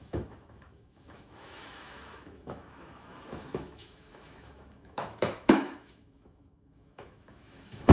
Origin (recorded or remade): remade